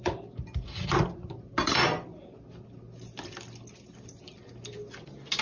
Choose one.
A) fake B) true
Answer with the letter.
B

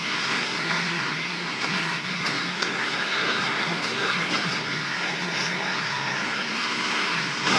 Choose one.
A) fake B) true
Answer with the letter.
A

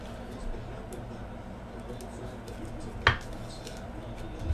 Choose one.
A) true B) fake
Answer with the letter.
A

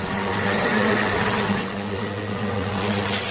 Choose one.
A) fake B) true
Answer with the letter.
A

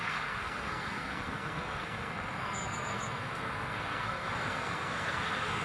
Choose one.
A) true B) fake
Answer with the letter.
B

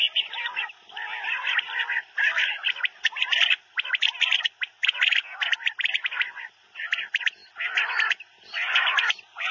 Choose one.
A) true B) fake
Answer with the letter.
A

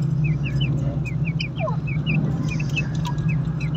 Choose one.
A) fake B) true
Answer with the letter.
B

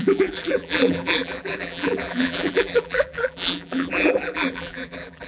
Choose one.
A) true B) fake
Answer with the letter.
B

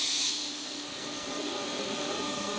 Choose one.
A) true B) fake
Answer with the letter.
B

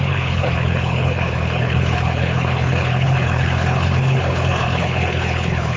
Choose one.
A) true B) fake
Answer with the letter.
B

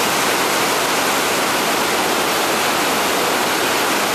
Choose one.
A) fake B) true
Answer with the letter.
B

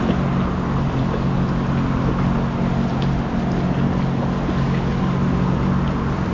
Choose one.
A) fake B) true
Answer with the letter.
B